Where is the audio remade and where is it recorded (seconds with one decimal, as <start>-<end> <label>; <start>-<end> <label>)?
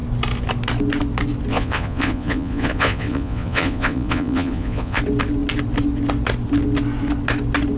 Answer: 0.0-1.5 recorded; 1.5-5.0 remade; 5.0-7.8 recorded